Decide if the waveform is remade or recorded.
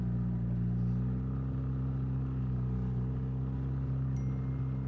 recorded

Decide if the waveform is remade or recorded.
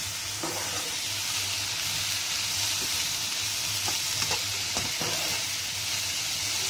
recorded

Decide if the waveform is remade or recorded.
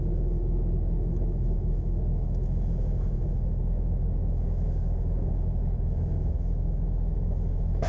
remade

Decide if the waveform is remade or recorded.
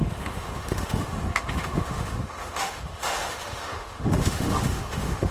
remade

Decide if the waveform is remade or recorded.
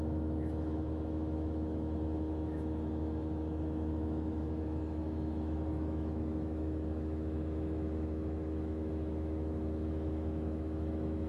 remade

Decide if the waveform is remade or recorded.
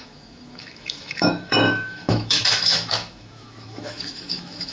remade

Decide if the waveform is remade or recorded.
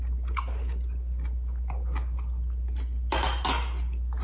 recorded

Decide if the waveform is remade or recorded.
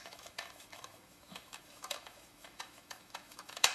remade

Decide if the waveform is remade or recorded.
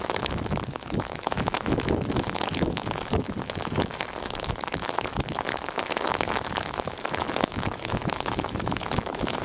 remade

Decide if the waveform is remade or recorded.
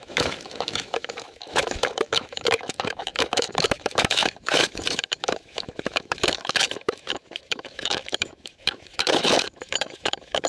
remade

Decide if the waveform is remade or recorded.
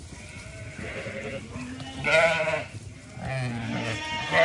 recorded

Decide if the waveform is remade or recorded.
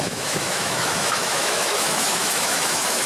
remade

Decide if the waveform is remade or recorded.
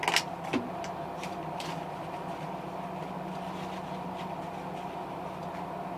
recorded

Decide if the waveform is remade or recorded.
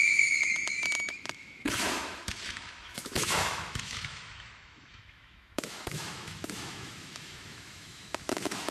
remade